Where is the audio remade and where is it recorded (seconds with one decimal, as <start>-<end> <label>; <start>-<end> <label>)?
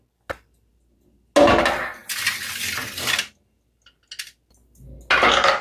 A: 0.0-5.6 recorded